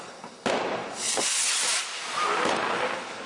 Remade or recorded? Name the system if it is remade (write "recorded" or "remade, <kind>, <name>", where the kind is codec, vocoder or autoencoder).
recorded